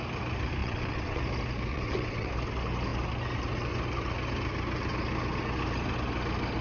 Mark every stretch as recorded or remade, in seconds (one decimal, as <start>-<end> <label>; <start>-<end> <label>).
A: 0.0-0.6 recorded; 0.6-1.2 remade; 1.2-1.7 recorded; 1.7-2.3 remade; 2.3-6.6 recorded